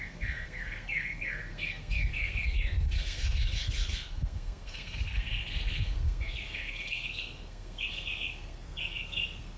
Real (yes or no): no